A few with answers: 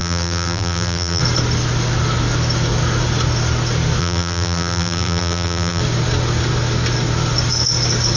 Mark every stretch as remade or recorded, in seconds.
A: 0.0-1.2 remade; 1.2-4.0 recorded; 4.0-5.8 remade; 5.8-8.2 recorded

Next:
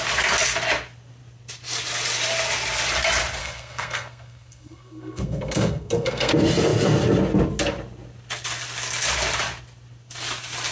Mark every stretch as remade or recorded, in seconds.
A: 0.0-3.4 recorded; 3.4-6.3 remade; 6.3-10.7 recorded

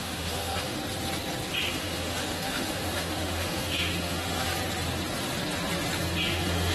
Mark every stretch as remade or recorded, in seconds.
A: 0.0-0.8 remade; 0.8-1.7 recorded; 1.7-4.5 remade; 4.5-6.3 recorded; 6.3-6.7 remade